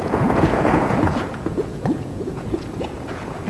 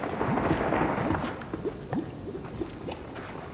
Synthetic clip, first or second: first